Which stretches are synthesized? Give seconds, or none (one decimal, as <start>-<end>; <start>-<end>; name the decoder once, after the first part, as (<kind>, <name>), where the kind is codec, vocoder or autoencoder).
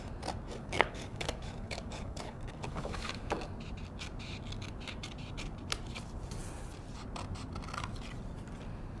0.6-3.5 (codec, DAC)